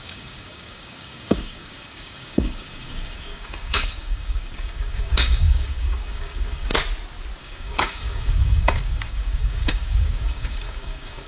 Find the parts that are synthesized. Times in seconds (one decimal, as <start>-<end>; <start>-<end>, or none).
0.0-6.7; 7.4-11.3